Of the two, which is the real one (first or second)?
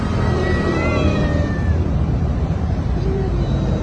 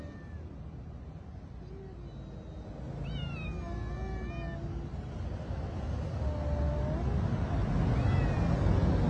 second